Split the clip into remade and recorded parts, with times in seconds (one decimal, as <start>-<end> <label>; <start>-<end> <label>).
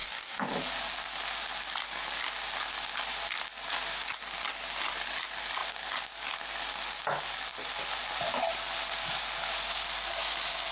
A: 0.0-0.5 remade; 0.5-10.7 recorded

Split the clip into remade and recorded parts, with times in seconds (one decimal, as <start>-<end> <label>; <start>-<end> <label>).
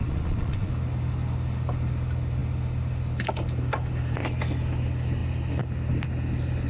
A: 0.0-0.7 remade; 0.7-6.7 recorded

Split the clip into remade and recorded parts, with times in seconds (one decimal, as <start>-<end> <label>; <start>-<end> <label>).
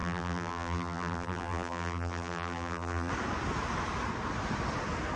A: 0.0-3.1 remade; 3.1-5.2 recorded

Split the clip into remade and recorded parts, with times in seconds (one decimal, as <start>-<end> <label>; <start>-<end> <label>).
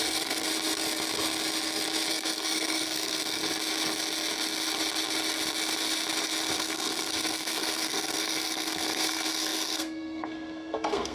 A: 0.0-0.5 remade; 0.5-2.1 recorded; 2.1-3.4 remade; 3.4-6.5 recorded; 6.5-11.1 remade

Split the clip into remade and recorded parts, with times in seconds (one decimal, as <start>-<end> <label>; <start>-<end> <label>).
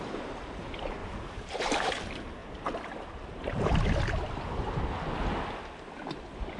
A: 0.0-1.0 recorded; 1.0-1.9 remade; 1.9-6.6 recorded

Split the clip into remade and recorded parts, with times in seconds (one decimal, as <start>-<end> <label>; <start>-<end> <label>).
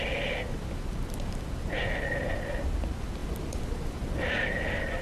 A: 0.0-5.0 recorded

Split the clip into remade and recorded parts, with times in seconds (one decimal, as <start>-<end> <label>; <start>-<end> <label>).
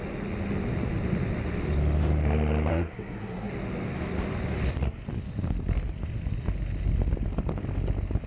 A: 0.0-2.7 recorded; 2.7-3.5 remade; 3.5-8.3 recorded